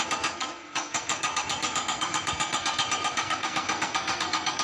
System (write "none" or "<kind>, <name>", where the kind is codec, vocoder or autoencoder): codec, SNAC